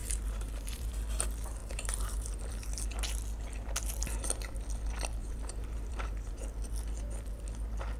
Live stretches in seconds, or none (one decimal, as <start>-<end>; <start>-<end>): 0.9-1.6; 2.5-5.2; 6.3-8.0

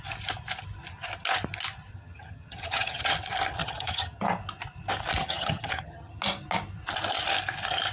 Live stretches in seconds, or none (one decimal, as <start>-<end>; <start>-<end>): 0.0-1.9; 3.1-3.6; 4.2-5.2; 6.2-7.9

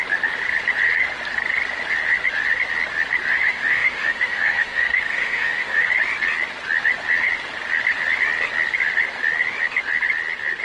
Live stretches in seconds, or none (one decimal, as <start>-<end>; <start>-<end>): 0.0-3.3; 5.9-10.6

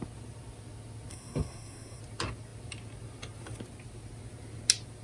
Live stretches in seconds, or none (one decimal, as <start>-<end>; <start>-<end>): 0.0-1.1; 2.0-5.0

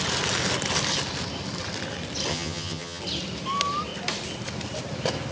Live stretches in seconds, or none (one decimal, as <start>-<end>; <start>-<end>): 0.0-2.3; 3.0-5.3

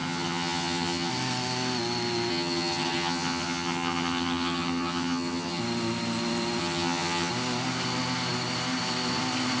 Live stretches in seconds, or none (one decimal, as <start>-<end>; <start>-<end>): 1.1-2.3; 5.6-6.6; 7.3-9.6